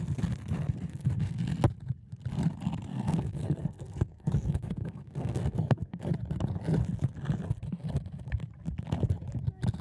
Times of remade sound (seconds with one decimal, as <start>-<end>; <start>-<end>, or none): 0.9-1.4; 2.9-6.1